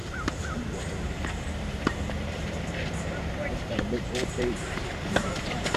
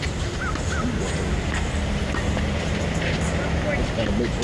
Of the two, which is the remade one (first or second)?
first